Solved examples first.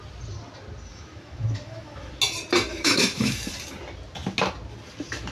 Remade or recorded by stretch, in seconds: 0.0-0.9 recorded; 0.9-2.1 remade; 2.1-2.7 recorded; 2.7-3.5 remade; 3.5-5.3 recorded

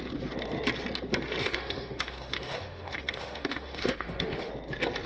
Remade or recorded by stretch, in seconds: 0.0-1.4 recorded; 1.4-4.5 remade; 4.5-5.1 recorded

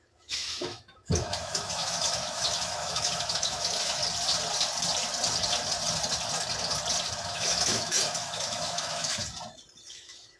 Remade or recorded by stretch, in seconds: 0.0-4.0 remade; 4.0-7.2 recorded; 7.2-9.2 remade; 9.2-9.9 recorded; 9.9-10.4 remade

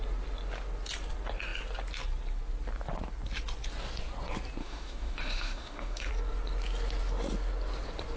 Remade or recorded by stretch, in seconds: 0.0-4.6 recorded; 4.6-6.1 remade; 6.1-8.2 recorded

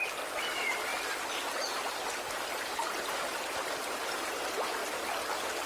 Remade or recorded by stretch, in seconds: 0.0-5.7 recorded

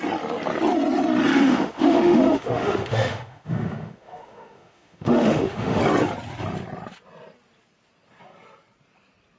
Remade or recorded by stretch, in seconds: 0.0-1.3 recorded; 1.3-5.8 remade; 5.8-9.4 recorded